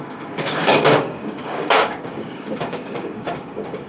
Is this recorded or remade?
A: remade